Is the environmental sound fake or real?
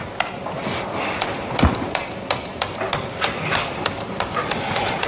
real